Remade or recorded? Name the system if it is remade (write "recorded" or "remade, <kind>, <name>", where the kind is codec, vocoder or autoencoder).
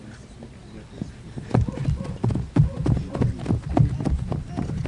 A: recorded